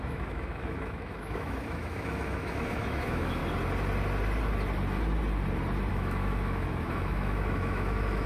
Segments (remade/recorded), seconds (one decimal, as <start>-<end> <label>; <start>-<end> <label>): 0.0-3.4 remade; 3.4-5.9 recorded; 5.9-8.3 remade